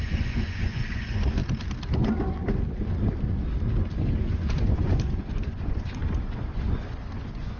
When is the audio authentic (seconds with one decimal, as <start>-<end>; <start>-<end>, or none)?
1.4-4.2